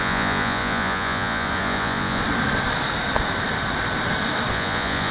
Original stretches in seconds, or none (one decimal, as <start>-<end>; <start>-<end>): 2.2-4.5